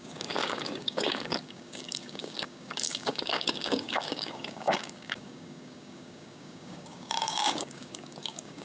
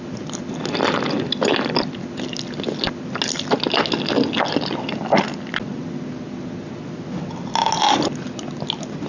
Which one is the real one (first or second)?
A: second